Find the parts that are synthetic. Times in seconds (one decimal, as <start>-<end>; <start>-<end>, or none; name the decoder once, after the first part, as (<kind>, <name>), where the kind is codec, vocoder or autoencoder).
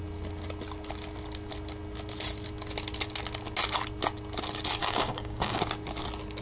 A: 4.8-5.6 (codec, DAC)